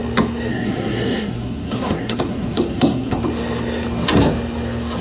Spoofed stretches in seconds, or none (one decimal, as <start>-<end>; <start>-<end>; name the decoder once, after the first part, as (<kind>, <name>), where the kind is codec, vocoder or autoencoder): 0.5-3.2 (codec, SNAC)